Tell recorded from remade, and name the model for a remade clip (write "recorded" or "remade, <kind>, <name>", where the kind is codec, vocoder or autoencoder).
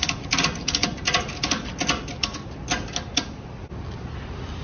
recorded